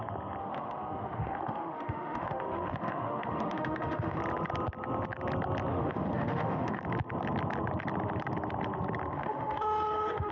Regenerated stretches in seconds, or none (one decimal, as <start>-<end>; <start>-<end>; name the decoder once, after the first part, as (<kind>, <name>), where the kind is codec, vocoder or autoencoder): 0.4-4.2 (autoencoder, DAC-VAE); 5.7-6.8; 9.1-10.3